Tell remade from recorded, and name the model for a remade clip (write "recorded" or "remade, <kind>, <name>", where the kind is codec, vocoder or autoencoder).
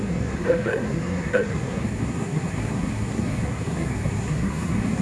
remade, codec, SNAC